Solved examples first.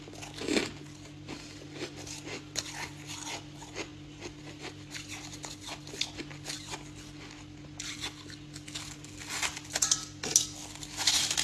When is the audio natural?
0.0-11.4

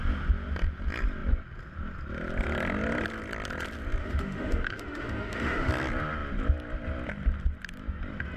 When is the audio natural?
0.0-4.0; 5.7-8.4

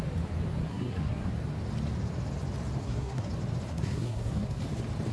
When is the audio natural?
0.0-0.6; 1.3-2.8; 3.3-3.7; 4.6-5.1

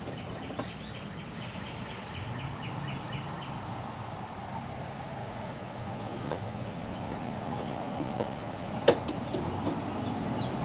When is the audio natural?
0.0-5.2; 8.7-10.6

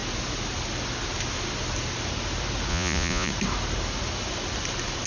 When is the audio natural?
0.0-2.7; 3.3-5.1